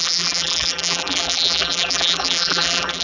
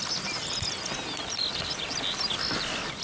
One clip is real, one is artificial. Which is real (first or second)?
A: second